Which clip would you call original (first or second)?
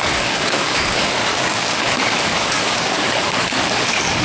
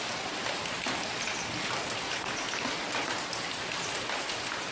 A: second